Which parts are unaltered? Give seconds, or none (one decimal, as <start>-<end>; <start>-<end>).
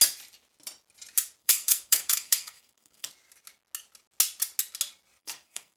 0.0-1.4; 3.1-5.2